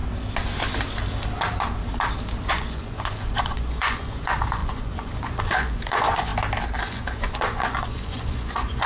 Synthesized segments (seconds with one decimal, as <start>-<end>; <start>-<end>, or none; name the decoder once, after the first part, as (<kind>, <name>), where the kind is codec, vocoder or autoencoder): 2.5-6.3 (vocoder, Vocos); 6.8-8.9